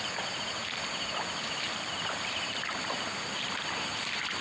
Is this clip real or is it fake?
real